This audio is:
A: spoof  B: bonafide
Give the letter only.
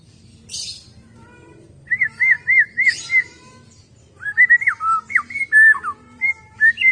B